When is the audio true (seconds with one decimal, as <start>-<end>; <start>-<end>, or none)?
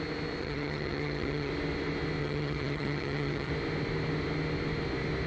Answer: 0.0-0.4; 1.5-2.2; 3.5-5.3